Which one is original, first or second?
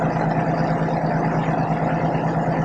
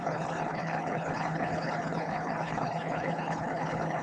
first